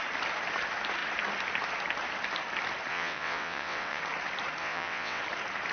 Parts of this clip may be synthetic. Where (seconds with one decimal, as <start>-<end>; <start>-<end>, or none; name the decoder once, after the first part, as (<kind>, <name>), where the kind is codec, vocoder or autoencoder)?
2.9-4.0 (vocoder, WaveNeXt); 4.6-5.2